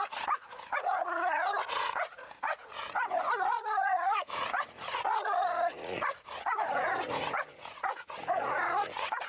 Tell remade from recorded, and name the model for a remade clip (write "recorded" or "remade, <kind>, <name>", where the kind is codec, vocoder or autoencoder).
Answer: remade, vocoder, Vocos